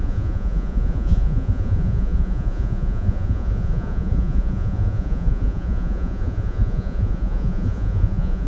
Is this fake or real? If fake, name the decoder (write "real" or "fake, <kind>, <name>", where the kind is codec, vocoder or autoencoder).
fake, vocoder, Vocos